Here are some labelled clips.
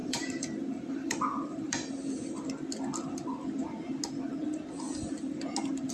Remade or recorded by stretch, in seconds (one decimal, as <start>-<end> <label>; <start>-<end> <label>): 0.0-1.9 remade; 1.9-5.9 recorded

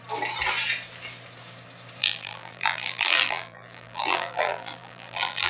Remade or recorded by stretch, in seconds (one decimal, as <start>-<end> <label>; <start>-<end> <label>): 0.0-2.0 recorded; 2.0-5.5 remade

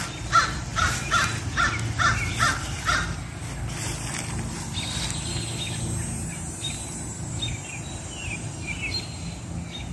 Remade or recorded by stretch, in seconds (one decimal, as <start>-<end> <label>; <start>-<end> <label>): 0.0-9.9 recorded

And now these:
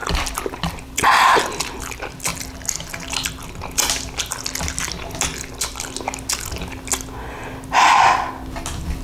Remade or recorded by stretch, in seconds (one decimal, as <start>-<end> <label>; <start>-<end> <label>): 0.0-1.9 remade; 1.9-9.0 recorded